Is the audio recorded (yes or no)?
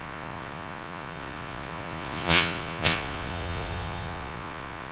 no